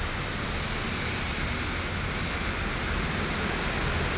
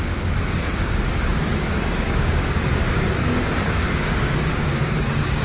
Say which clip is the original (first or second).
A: first